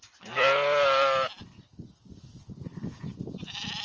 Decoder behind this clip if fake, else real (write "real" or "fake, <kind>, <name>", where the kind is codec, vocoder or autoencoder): real